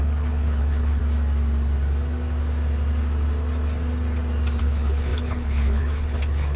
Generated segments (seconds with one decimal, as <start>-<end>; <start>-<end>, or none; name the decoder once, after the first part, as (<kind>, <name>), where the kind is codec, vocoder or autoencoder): 0.0-1.0 (codec, HILCodec); 4.6-6.6